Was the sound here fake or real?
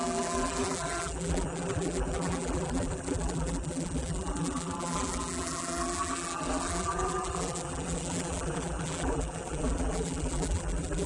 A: fake